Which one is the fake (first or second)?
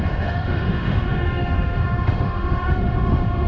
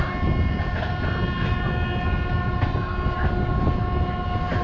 first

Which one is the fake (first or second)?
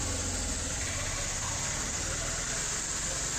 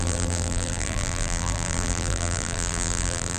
second